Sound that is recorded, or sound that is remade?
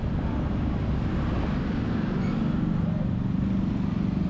recorded